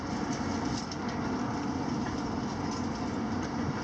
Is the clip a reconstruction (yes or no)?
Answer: no